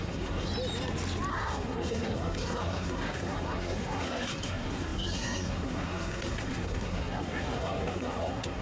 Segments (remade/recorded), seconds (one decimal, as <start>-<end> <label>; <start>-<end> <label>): 0.0-0.5 remade; 0.5-1.3 recorded; 1.3-8.6 remade